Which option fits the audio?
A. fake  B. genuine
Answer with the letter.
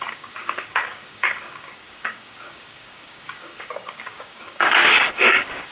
A